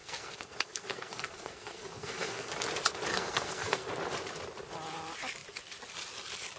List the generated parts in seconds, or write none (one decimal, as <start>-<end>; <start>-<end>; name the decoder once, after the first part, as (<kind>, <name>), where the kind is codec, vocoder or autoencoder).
0.0-2.5 (codec, SNAC); 3.1-3.9